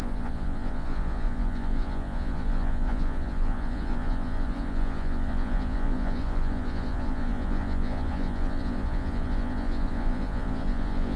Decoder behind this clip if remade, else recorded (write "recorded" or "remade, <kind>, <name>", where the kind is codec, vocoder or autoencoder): remade, vocoder, Vocos